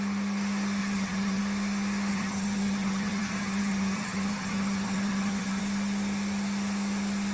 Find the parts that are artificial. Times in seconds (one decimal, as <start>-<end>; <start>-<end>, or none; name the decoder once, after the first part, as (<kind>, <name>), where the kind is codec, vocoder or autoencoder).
0.8-1.4 (vocoder, HiFi-GAN); 2.1-5.6